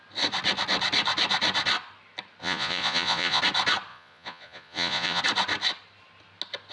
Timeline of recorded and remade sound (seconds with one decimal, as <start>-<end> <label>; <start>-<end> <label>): 0.0-2.4 recorded; 2.4-3.4 remade; 3.4-3.9 recorded; 3.9-5.2 remade; 5.2-6.7 recorded